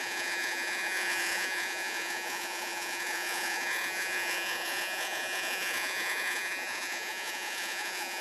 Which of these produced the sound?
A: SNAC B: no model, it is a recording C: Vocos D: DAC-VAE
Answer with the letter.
C